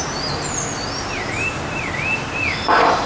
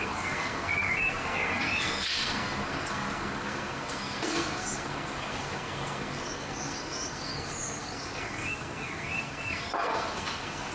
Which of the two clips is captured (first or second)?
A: first